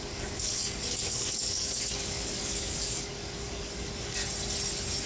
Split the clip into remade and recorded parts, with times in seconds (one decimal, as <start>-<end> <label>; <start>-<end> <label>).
0.0-0.6 remade; 0.6-1.1 recorded; 1.1-4.2 remade; 4.2-5.1 recorded